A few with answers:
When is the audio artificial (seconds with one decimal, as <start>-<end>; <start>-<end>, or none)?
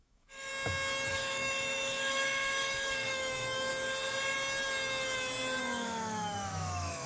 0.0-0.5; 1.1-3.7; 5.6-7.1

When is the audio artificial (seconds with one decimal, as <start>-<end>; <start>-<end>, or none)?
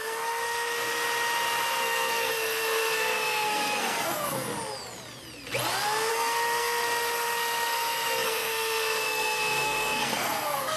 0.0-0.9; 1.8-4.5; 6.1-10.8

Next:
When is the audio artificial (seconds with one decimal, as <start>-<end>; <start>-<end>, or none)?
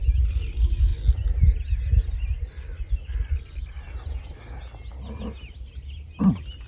none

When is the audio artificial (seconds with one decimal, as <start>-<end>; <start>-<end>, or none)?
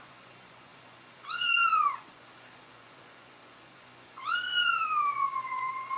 0.0-6.0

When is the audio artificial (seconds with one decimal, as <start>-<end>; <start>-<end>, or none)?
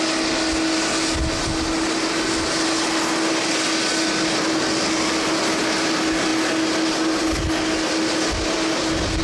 none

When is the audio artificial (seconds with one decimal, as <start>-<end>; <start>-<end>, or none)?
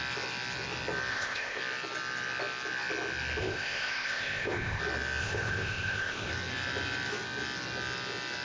1.1-1.6; 3.4-4.8; 5.2-6.3